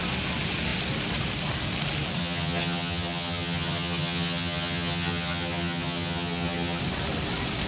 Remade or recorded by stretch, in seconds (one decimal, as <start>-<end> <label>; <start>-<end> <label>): 0.0-2.2 recorded; 2.2-6.8 remade; 6.8-7.7 recorded